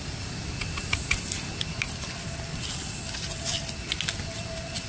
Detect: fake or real real